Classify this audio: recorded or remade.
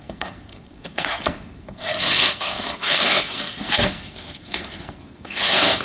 remade